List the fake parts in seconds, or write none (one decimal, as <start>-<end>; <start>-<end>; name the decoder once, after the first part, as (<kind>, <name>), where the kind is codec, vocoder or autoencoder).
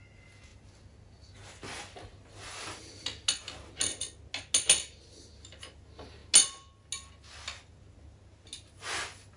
none